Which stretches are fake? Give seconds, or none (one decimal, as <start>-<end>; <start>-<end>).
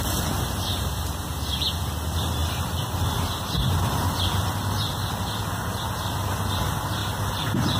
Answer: 2.4-5.5; 7.0-7.8